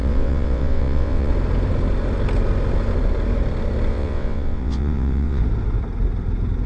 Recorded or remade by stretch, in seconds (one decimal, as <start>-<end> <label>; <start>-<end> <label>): 0.0-1.3 remade; 1.3-3.9 recorded; 3.9-5.4 remade; 5.4-6.7 recorded